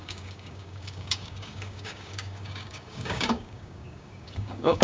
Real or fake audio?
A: fake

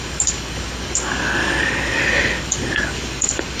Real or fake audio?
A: fake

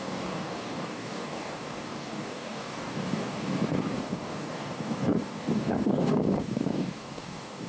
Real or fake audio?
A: fake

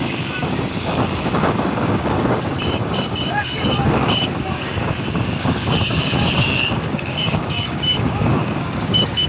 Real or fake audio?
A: fake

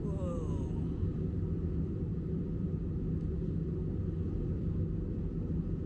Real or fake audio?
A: real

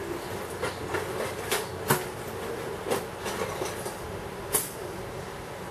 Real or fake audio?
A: real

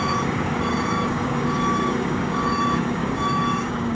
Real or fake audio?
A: fake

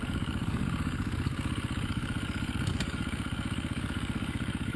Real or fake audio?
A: fake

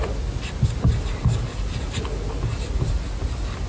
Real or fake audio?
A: real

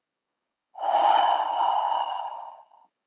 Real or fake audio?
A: fake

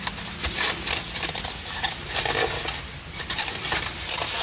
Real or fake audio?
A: real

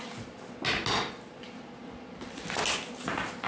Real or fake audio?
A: real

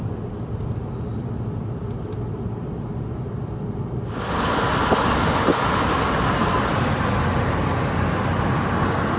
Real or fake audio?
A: real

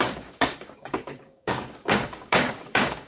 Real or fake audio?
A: fake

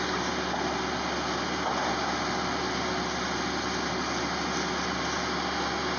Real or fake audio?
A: real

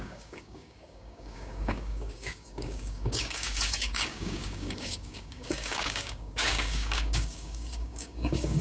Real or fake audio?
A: fake